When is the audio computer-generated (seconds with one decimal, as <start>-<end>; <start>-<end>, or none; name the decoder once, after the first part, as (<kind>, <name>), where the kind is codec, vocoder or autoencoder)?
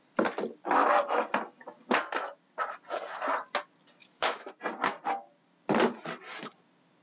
4.0-4.5 (autoencoder, DAC-VAE)